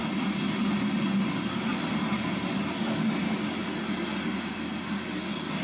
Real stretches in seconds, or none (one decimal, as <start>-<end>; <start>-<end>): 0.0-5.6

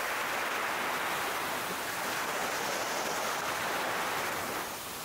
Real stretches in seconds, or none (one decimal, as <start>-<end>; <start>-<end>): 0.0-5.0

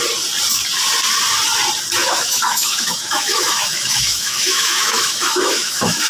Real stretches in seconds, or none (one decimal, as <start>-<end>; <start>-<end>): 0.0-2.0

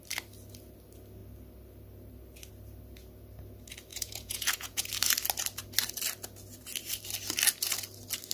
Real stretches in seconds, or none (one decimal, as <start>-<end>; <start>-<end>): 0.0-3.9; 4.9-8.3

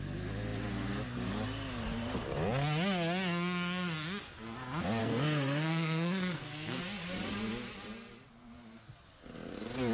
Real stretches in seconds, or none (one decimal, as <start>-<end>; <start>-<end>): 0.0-5.0; 6.8-9.9

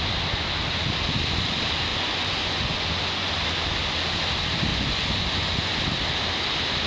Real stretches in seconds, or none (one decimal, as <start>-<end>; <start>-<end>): 0.0-1.9; 3.3-4.7; 5.8-6.9

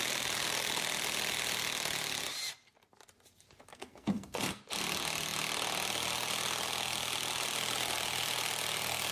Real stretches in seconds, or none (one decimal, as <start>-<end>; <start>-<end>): 0.0-3.7; 4.6-9.1